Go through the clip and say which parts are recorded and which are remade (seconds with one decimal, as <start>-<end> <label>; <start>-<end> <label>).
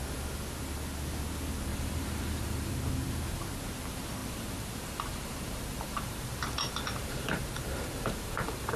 0.0-1.7 recorded; 1.7-2.7 remade; 2.7-4.2 recorded; 4.2-8.8 remade